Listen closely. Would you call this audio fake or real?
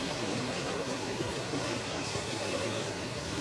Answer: fake